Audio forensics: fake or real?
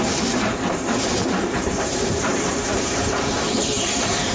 fake